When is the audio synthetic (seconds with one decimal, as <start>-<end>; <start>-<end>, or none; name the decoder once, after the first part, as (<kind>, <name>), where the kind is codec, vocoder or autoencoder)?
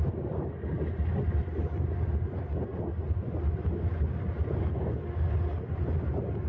none